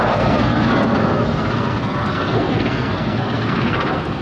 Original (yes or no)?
no